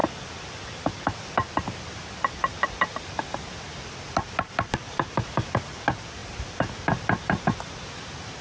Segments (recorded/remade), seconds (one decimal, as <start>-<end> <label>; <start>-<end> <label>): 0.0-3.6 recorded; 3.6-8.4 remade